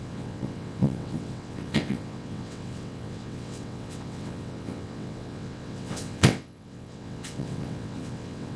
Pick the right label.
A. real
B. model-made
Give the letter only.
B